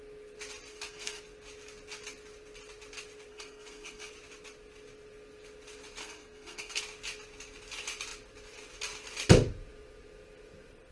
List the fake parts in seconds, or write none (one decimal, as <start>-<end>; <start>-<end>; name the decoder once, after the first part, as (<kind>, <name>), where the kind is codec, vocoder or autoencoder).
0.7-1.2 (codec, SNAC); 3.3-4.1; 6.0-6.8